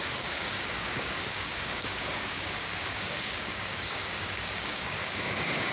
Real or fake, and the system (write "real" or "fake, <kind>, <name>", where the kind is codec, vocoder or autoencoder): fake, codec, DAC